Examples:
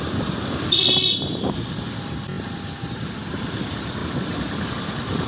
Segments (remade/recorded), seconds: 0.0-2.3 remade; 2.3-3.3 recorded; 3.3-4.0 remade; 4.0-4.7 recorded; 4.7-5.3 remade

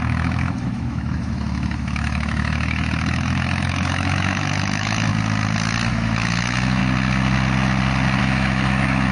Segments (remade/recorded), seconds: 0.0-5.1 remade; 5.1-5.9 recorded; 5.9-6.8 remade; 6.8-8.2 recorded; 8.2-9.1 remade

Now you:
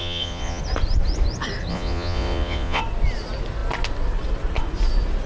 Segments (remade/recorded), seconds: 0.0-0.6 remade; 0.6-1.7 recorded; 1.7-2.8 remade; 2.8-5.3 recorded

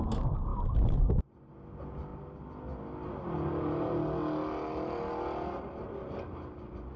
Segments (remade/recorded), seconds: 0.0-0.5 recorded; 0.5-1.5 remade; 1.5-7.0 recorded

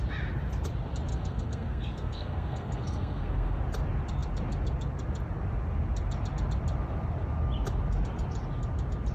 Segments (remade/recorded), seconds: 0.0-1.1 recorded; 1.1-3.6 remade; 3.6-9.1 recorded

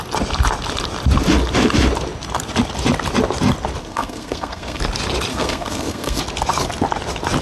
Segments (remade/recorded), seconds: 0.0-3.8 recorded; 3.8-4.8 remade; 4.8-5.3 recorded; 5.3-6.2 remade; 6.2-7.4 recorded